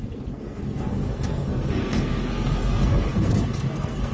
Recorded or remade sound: remade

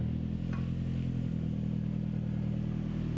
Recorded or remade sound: recorded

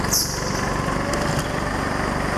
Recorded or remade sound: recorded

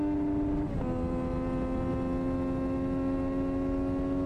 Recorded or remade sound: recorded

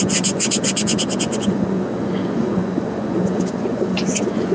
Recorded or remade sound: remade